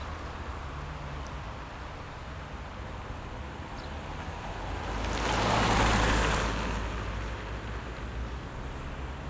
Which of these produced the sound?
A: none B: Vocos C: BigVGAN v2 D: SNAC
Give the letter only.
A